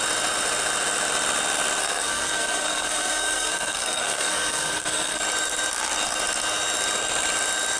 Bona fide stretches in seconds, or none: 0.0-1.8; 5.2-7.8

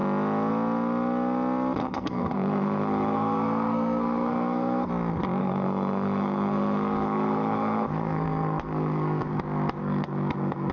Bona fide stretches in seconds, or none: 0.0-1.8; 4.9-5.4; 9.4-9.8

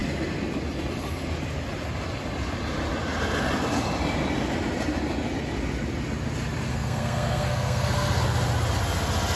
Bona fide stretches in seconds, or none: 0.0-6.7; 8.2-9.4

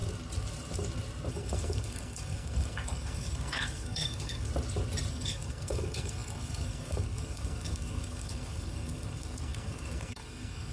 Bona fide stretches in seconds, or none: 0.0-1.3; 4.5-5.1

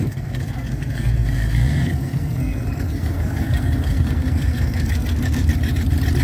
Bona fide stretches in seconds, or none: 5.5-6.2